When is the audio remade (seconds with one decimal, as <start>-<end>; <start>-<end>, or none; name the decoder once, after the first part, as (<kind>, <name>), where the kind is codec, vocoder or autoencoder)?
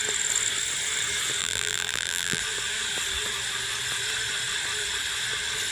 1.4-2.4 (vocoder, BigVGAN v2)